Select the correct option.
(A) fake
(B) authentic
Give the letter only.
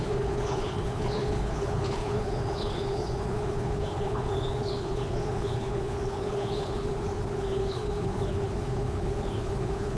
A